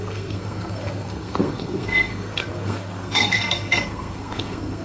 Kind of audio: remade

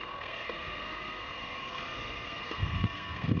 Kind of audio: remade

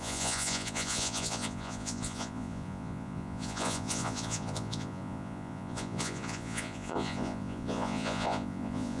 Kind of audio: remade